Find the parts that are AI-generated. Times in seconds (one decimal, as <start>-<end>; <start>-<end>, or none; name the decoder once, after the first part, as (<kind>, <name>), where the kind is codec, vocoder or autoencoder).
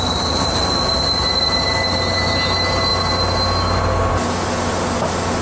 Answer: none